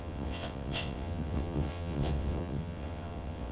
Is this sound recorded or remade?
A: remade